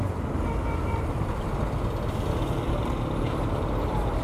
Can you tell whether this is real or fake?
real